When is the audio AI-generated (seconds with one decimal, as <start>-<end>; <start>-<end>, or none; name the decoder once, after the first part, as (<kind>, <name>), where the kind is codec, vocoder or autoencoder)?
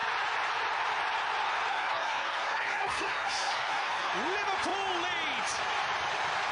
1.7-4.1 (codec, SNAC)